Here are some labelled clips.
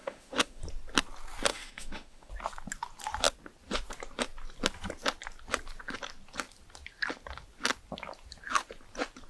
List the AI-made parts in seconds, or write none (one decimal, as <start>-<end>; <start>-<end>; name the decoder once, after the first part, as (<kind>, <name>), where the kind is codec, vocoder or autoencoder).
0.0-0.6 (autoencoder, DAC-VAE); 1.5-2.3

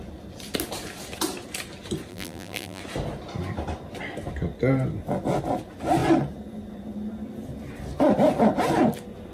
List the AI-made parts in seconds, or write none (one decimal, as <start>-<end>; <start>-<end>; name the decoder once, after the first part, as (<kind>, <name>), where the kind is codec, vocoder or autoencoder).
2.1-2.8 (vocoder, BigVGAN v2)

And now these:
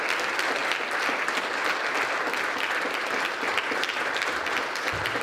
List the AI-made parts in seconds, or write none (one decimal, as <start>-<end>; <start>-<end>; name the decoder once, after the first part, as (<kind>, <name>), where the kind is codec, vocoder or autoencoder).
none

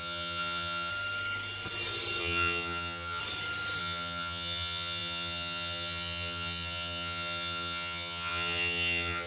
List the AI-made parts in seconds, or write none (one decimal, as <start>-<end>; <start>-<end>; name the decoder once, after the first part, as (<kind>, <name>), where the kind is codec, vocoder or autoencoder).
0.0-0.9 (vocoder, HiFi-GAN); 2.2-3.2; 3.8-9.3

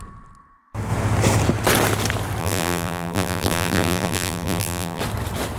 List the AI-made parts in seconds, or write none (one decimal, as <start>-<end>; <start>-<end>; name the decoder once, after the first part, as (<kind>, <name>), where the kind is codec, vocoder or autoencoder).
2.4-5.0 (vocoder, BigVGAN v2)

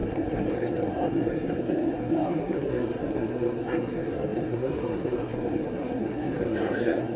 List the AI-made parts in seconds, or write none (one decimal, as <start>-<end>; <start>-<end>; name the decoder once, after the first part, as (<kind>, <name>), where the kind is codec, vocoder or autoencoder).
0.0-7.2 (codec, SNAC)

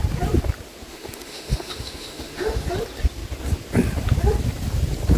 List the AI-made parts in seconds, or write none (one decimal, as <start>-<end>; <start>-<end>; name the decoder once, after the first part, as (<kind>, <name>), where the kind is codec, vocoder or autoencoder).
0.9-2.7 (autoencoder, DAC-VAE)